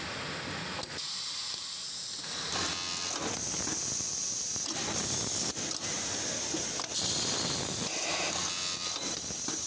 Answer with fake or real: real